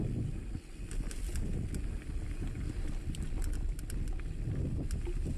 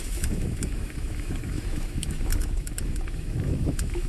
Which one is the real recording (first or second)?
first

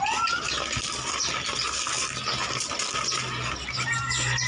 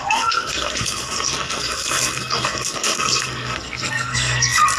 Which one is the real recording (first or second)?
first